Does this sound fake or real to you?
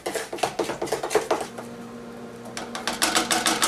real